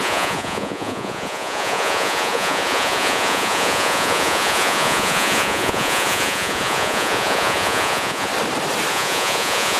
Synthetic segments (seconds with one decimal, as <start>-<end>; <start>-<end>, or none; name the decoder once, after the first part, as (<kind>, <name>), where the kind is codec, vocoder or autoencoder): 0.0-8.3 (vocoder, Vocos); 8.9-9.8